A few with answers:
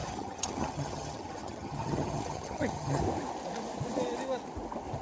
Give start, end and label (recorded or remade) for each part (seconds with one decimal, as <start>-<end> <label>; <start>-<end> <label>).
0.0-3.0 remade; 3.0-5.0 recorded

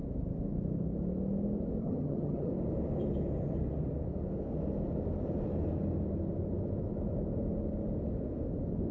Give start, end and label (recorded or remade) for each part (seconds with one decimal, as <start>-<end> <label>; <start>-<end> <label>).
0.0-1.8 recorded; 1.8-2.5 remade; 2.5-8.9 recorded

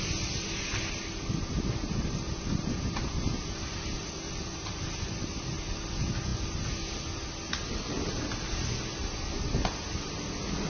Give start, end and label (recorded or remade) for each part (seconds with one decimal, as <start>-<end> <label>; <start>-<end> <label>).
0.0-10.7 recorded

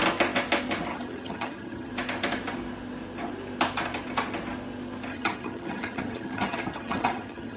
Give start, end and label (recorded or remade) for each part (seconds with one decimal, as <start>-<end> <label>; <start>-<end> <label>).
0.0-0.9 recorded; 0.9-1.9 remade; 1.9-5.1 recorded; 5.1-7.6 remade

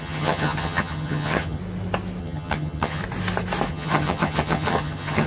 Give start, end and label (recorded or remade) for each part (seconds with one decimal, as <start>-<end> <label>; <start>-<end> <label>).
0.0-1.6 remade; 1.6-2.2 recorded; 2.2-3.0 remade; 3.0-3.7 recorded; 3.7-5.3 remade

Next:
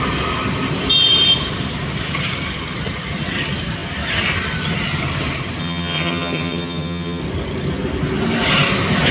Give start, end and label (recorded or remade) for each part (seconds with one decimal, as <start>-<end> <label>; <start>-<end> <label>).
0.0-5.6 recorded; 5.6-7.2 remade; 7.2-9.1 recorded